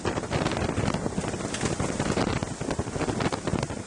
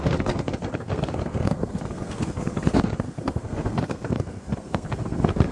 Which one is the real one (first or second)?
first